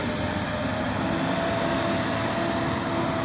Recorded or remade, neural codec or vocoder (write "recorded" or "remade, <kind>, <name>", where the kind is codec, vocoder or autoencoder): recorded